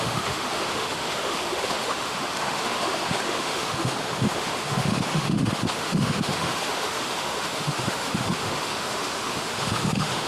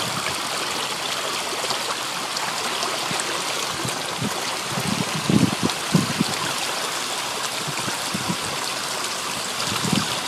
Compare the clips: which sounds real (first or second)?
second